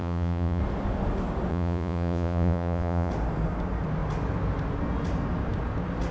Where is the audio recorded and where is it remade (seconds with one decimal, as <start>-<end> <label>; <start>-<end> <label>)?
0.0-0.6 remade; 0.6-1.5 recorded; 1.5-3.1 remade; 3.1-6.1 recorded